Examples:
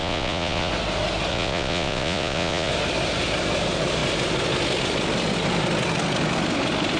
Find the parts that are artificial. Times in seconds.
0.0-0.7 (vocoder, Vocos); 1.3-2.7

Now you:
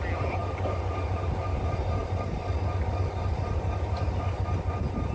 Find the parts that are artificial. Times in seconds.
none

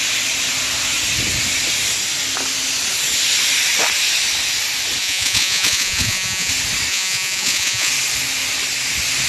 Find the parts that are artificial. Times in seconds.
5.0-6.5 (vocoder, Vocos); 6.9-7.9

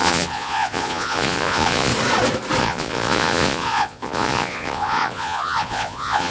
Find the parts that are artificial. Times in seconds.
0.0-1.9 (vocoder, Vocos); 2.6-6.3

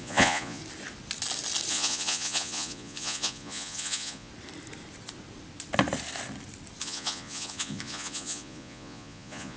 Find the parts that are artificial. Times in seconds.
0.0-0.6 (vocoder, Vocos); 1.7-4.3; 6.8-9.6

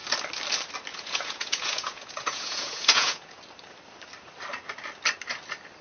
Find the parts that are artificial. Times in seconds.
0.9-3.4 (vocoder, Vocos)

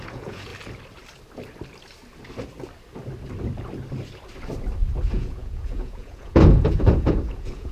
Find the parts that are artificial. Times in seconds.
0.0-0.5 (vocoder, Vocos); 5.0-7.7